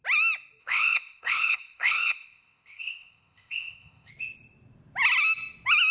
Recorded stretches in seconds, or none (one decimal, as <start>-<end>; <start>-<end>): 0.0-0.6; 4.1-5.9